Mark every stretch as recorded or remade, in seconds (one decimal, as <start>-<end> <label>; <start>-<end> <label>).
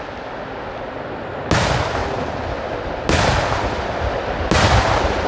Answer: 0.0-5.3 recorded